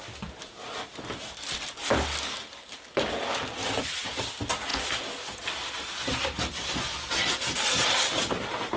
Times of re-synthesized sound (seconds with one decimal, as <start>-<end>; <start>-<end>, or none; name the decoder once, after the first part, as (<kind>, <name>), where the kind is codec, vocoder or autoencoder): none